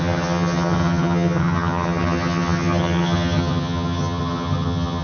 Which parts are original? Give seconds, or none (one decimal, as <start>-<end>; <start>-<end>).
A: none